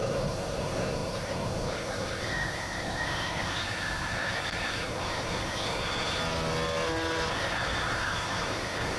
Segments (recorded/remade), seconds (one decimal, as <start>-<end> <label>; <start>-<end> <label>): 0.0-6.2 remade; 6.2-7.3 recorded; 7.3-9.0 remade